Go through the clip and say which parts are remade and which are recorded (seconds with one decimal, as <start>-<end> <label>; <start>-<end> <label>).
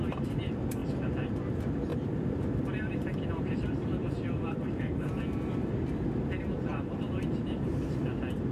0.0-1.9 recorded; 1.9-5.2 remade; 5.2-6.7 recorded; 6.7-7.7 remade; 7.7-8.5 recorded